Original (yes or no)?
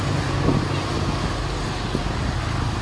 yes